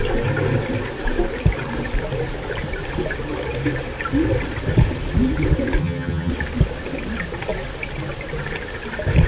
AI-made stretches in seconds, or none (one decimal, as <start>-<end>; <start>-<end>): 5.8-6.3

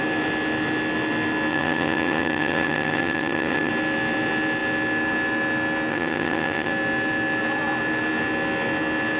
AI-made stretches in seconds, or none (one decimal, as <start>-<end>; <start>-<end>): 1.5-3.7; 5.9-6.7

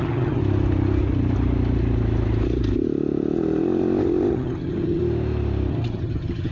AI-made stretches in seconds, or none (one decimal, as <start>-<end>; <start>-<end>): 0.0-0.4; 4.3-5.0; 5.7-6.5

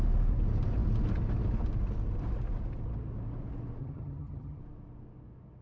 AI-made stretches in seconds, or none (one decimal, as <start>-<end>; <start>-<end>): 3.8-4.6

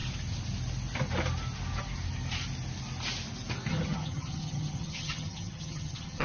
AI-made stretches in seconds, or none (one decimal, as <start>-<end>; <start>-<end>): 3.7-6.2

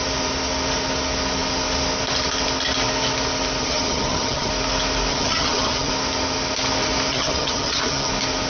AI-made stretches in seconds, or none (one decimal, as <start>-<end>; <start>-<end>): 3.6-4.5; 5.1-5.9; 7.1-8.1

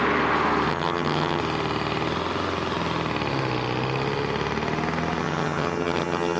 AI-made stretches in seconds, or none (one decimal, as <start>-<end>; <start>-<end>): 0.7-1.4; 5.2-6.4